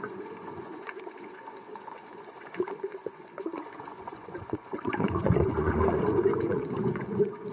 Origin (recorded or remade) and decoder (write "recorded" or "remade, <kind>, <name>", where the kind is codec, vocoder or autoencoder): remade, vocoder, Vocos